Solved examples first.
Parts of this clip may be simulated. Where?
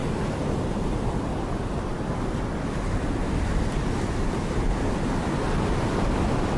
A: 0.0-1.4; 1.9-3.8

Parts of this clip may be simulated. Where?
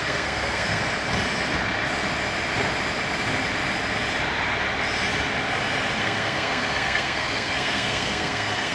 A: 0.0-0.8; 6.0-8.7